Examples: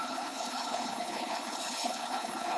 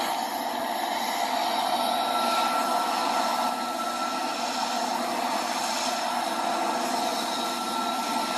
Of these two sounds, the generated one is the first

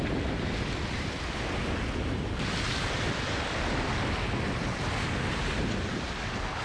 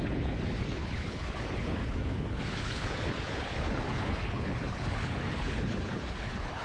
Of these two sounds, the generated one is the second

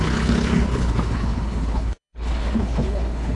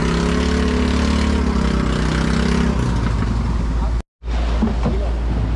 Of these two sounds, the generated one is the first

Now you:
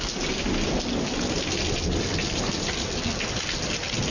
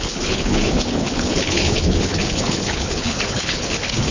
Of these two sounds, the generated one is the second